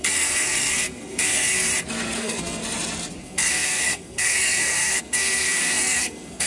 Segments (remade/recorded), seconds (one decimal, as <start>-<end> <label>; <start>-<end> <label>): 0.0-1.7 remade; 1.7-2.2 recorded; 2.2-2.6 remade; 2.6-3.2 recorded; 3.2-6.5 remade